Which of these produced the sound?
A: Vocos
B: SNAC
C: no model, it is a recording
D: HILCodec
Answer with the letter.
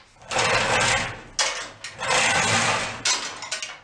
C